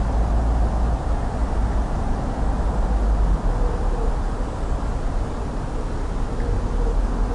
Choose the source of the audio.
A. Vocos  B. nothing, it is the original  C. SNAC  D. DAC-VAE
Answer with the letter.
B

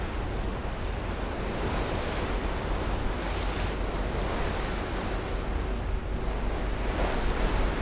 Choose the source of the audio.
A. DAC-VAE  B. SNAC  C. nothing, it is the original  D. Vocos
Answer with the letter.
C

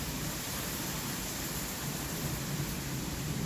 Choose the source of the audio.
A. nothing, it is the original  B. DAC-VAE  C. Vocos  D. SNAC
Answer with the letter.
A